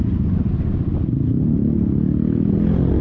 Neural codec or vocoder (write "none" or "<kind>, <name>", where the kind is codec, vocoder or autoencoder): none